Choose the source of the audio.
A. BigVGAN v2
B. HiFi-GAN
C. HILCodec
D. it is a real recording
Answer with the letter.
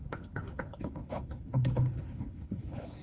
C